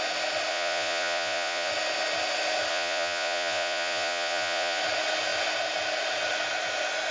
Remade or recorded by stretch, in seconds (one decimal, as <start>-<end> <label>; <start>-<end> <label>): 0.0-0.5 recorded; 0.5-1.7 remade; 1.7-2.7 recorded; 2.7-4.8 remade; 4.8-7.1 recorded